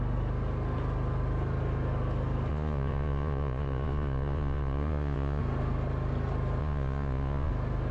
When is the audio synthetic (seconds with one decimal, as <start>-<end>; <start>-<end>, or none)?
2.5-5.4; 6.6-7.5